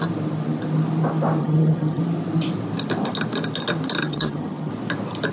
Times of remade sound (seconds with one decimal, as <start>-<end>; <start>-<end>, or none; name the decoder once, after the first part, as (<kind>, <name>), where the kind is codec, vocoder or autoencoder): 1.4-2.0 (vocoder, HiFi-GAN); 4.0-4.7